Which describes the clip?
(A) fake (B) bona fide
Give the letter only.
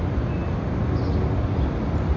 B